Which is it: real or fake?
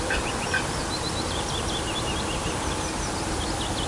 real